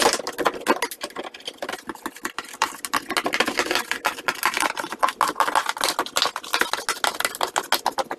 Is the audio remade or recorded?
recorded